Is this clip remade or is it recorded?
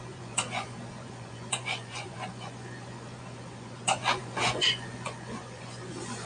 remade